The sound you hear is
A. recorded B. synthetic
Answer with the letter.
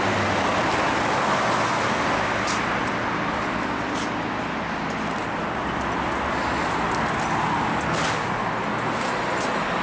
A